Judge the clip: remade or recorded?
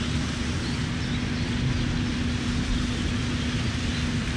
recorded